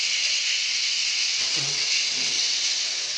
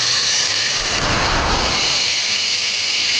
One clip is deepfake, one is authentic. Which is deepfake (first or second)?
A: first